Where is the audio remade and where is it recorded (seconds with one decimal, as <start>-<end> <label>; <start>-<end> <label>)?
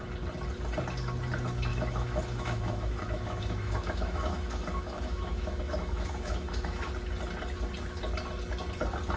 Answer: 0.0-1.7 recorded; 1.7-6.9 remade; 6.9-9.2 recorded